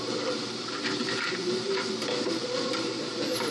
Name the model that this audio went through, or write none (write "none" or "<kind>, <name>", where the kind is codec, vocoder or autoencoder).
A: vocoder, BigVGAN v2